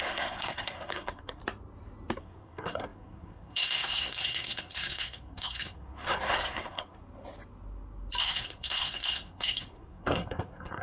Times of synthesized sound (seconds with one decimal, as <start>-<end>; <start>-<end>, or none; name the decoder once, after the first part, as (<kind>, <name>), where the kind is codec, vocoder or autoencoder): 0.0-1.4 (codec, SNAC); 2.2-7.0; 8.2-10.8